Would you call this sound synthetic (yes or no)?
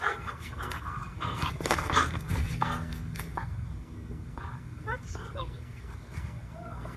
yes